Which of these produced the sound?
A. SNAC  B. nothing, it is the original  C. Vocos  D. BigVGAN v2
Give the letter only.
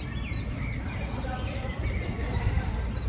B